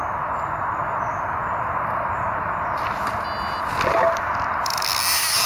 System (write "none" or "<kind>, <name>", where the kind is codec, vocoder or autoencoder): none